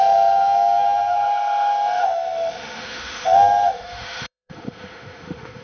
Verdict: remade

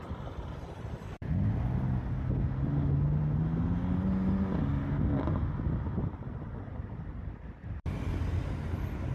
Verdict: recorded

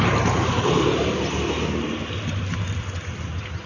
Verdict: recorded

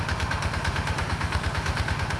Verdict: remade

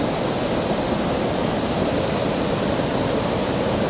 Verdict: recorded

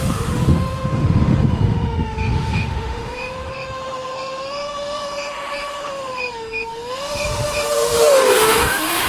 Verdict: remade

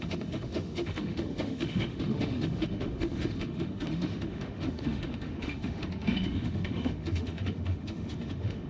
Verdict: remade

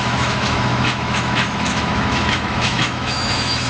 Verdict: remade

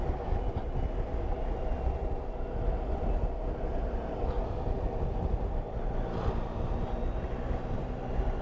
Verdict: recorded